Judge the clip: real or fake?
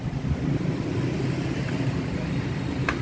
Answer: real